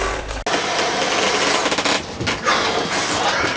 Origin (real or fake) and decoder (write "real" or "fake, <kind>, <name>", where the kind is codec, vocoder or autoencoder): real